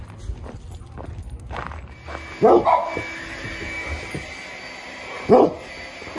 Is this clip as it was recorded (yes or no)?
yes